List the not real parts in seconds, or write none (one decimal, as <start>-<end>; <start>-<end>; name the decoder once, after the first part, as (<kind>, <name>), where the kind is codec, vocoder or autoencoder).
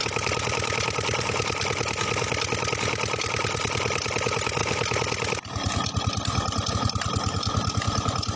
none